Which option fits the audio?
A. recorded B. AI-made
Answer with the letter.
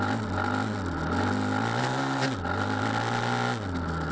A